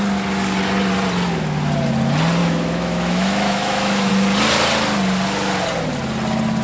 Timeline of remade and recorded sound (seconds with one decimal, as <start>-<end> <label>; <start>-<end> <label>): 0.0-2.4 recorded; 2.4-4.1 remade; 4.1-6.6 recorded